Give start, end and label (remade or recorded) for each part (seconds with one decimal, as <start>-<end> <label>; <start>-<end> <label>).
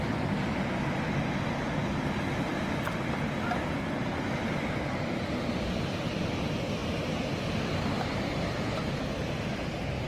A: 0.0-6.8 recorded; 6.8-8.4 remade; 8.4-10.1 recorded